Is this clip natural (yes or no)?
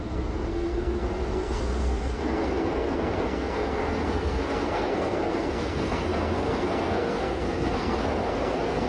no